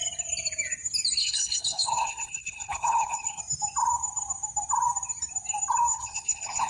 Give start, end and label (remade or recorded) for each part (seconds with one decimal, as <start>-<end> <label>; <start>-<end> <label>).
0.0-1.2 recorded; 1.2-3.4 remade; 3.4-5.9 recorded; 5.9-6.7 remade